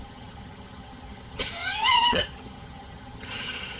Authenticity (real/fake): fake